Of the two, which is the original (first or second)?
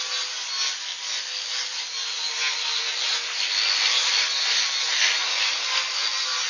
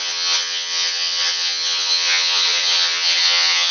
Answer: first